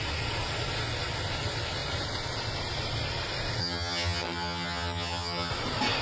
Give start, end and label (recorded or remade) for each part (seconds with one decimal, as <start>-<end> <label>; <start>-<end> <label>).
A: 0.0-3.6 recorded; 3.6-5.5 remade; 5.5-6.0 recorded